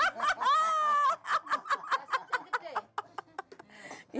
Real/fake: real